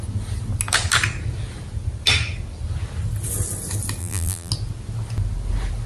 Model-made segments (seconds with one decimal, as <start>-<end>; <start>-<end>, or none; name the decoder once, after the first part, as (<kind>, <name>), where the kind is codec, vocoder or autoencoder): 4.0-4.5 (vocoder, BigVGAN v2)